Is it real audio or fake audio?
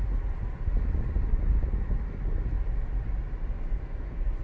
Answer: real